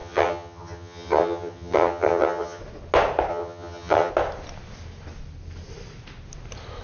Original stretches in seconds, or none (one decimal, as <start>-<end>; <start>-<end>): 2.6-3.3; 4.1-6.8